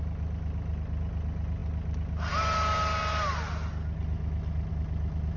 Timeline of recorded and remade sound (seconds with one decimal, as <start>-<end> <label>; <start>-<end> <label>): 0.0-5.4 recorded